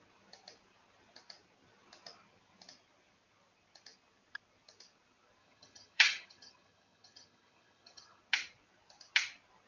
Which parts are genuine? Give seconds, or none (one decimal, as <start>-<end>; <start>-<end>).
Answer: 0.0-5.4; 8.2-9.7